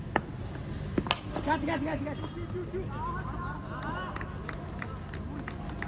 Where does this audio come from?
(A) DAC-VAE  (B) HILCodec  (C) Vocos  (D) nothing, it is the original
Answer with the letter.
D